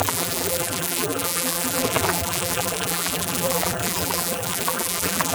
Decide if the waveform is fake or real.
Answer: fake